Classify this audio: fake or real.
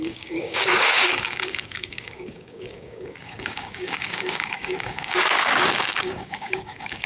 fake